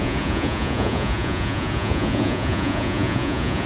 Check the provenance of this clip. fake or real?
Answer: fake